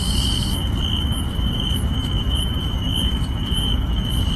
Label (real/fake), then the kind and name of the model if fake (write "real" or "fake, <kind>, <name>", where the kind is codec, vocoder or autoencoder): fake, autoencoder, DAC-VAE